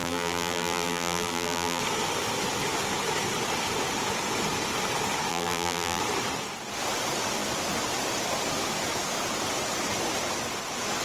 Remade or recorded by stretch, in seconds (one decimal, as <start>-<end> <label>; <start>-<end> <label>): 0.0-1.8 remade; 1.8-5.3 recorded; 5.3-6.0 remade; 6.0-11.0 recorded